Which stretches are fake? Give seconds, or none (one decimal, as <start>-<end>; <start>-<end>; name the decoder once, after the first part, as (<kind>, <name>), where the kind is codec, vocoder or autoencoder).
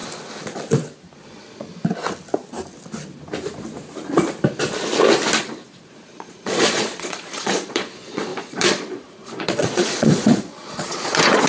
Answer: 1.2-1.7 (vocoder, Vocos); 5.4-11.5